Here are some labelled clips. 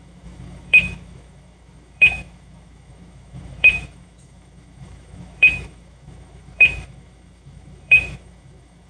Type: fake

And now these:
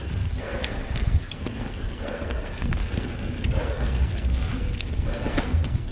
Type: fake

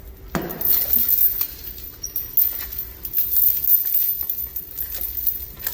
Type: real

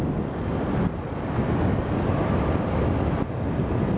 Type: real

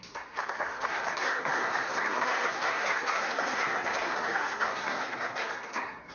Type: fake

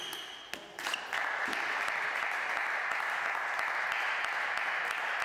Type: real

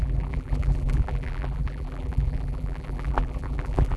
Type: fake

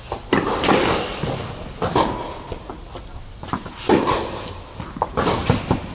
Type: real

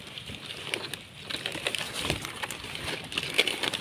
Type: real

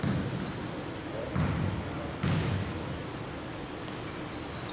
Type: real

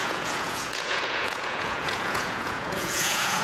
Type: fake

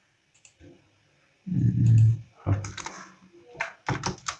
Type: real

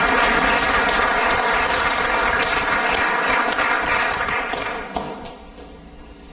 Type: real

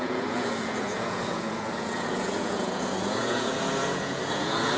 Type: fake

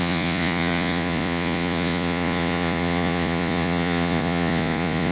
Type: fake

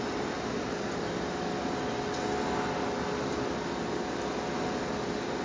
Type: real